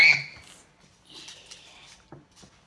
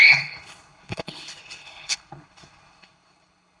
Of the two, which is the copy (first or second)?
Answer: second